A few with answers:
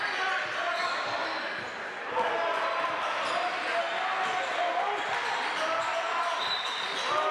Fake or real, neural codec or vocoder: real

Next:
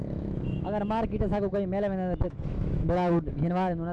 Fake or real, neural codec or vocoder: fake, autoencoder, DAC-VAE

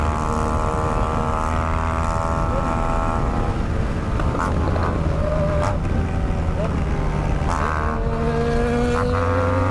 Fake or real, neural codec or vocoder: real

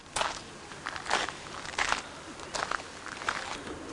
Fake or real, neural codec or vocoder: real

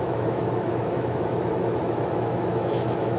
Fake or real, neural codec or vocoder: fake, autoencoder, DAC-VAE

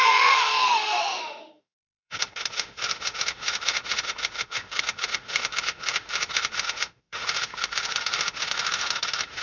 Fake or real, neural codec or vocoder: fake, autoencoder, DAC-VAE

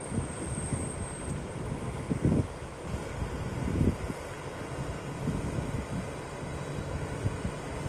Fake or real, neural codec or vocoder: real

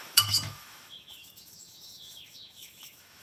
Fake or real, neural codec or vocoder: fake, autoencoder, DAC-VAE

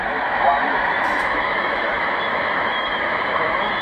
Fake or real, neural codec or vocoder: fake, autoencoder, DAC-VAE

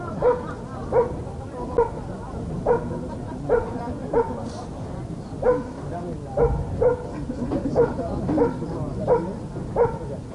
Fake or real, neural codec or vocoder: real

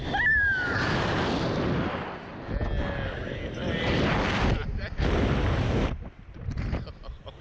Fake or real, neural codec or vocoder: real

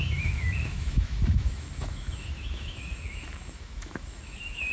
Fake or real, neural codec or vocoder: fake, autoencoder, DAC-VAE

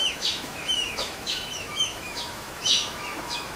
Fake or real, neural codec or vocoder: fake, autoencoder, DAC-VAE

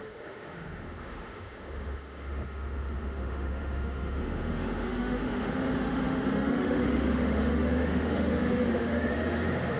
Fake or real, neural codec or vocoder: fake, autoencoder, DAC-VAE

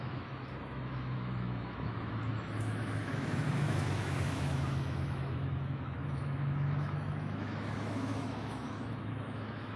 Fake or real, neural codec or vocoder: fake, autoencoder, DAC-VAE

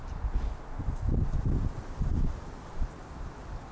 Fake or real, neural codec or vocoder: real